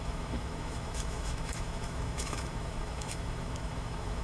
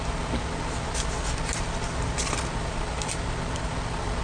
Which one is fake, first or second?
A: first